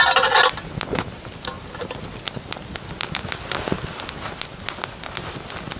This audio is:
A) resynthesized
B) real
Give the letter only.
B